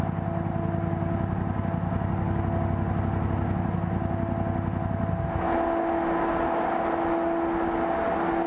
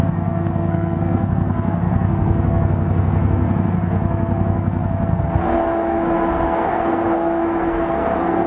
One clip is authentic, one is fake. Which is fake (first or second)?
second